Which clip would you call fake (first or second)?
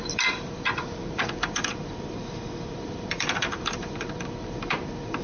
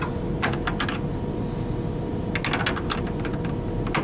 first